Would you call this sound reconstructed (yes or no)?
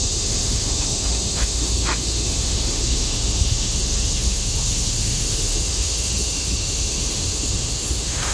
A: yes